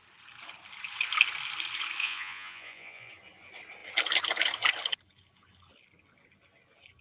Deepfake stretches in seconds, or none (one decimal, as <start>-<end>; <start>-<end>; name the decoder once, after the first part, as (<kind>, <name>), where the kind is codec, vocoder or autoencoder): 2.0-3.1 (vocoder, Vocos)